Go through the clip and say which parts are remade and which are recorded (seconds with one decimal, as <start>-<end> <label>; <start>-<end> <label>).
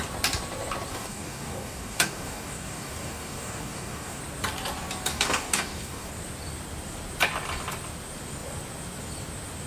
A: 0.0-0.9 recorded; 0.9-4.2 remade; 4.2-5.1 recorded; 5.1-6.1 remade; 6.1-9.7 recorded